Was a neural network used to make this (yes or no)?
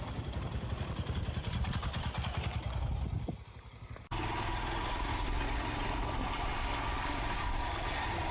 no